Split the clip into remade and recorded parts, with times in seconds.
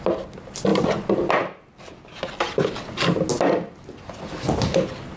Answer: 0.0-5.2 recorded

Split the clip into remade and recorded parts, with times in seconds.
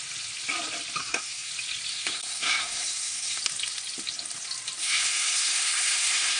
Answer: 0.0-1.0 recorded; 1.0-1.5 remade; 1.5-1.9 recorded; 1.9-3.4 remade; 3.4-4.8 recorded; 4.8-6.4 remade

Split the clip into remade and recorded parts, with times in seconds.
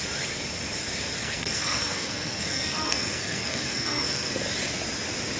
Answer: 0.0-1.2 recorded; 1.2-4.4 remade; 4.4-5.4 recorded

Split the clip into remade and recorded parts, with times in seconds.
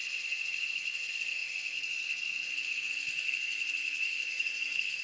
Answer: 0.0-5.0 remade